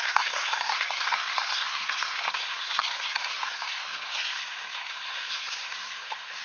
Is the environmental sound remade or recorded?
remade